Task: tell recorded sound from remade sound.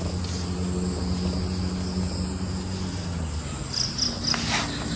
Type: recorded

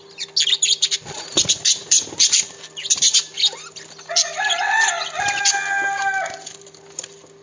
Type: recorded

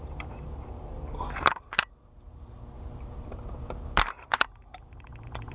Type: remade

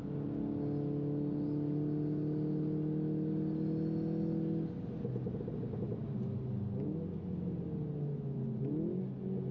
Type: recorded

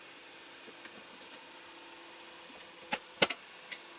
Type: recorded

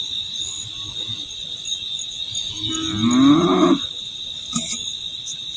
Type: recorded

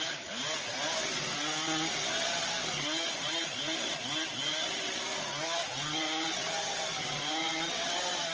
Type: recorded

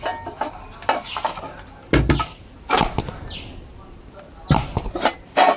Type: recorded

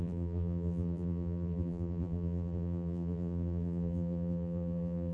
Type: remade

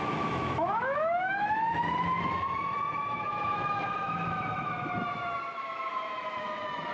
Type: remade